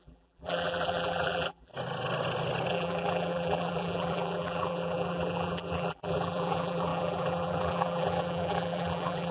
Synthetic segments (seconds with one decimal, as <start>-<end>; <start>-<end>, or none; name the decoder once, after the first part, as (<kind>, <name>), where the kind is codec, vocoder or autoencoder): 0.0-1.7 (vocoder, BigVGAN v2); 2.7-9.3